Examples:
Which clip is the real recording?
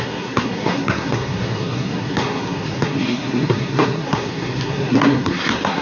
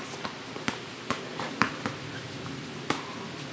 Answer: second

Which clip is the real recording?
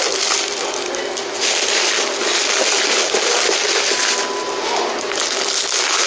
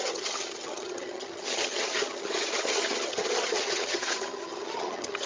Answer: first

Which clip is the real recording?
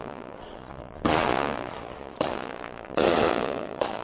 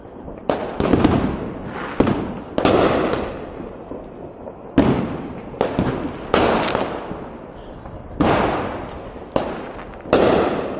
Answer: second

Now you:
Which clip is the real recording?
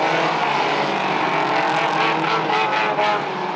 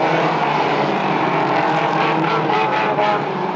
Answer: first